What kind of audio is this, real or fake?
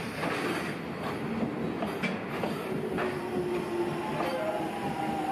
real